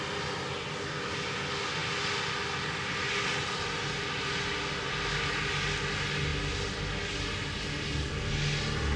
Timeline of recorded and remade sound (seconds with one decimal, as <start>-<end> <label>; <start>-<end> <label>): 0.0-9.0 recorded